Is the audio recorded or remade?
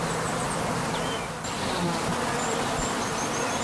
recorded